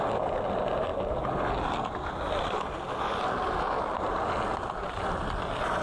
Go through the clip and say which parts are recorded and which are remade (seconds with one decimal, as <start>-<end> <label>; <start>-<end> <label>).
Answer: 0.0-5.8 recorded